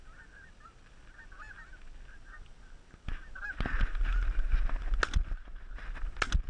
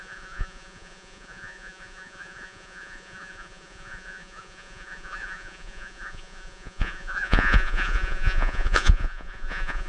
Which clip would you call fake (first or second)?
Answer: second